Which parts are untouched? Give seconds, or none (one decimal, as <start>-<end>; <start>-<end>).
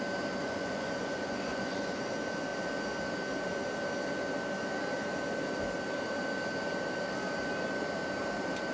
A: 0.0-0.4; 2.1-8.7